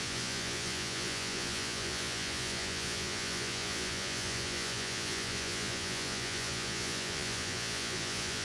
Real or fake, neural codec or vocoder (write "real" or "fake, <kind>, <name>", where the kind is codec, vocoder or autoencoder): fake, vocoder, Vocos